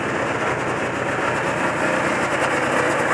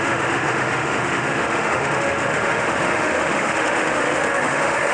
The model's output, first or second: second